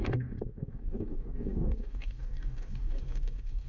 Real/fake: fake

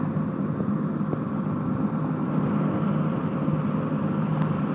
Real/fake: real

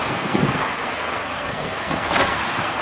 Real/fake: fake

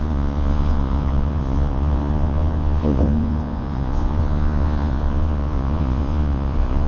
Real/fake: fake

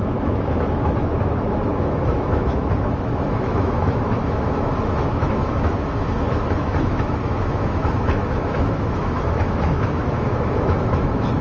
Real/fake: fake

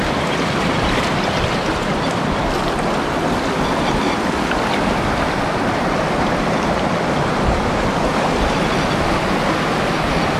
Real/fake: real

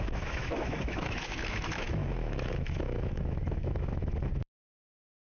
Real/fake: fake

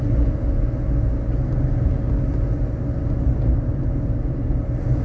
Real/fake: real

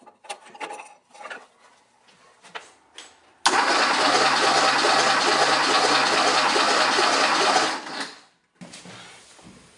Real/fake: real